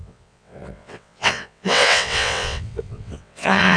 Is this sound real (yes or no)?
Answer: no